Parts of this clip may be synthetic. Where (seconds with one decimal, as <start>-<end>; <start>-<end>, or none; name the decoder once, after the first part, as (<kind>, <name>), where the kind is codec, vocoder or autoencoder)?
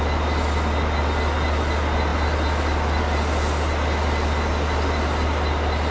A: none